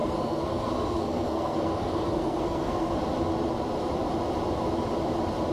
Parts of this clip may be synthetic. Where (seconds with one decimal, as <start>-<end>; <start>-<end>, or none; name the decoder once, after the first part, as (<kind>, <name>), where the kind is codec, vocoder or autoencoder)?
0.0-3.0 (codec, SNAC)